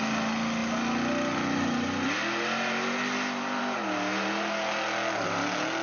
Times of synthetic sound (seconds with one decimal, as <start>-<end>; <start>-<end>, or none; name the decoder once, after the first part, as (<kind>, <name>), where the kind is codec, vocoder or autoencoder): none